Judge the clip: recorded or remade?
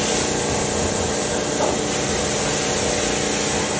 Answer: recorded